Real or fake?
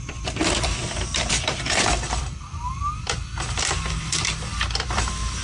fake